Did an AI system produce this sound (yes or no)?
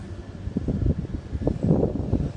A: no